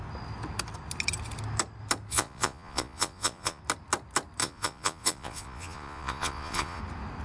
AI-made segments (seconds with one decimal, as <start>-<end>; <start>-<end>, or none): 2.1-3.6; 4.4-6.8